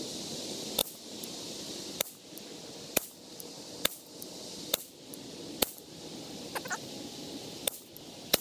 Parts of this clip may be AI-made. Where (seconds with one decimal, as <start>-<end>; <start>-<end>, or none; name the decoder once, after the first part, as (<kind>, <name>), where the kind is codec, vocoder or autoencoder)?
0.0-8.4 (vocoder, BigVGAN v2)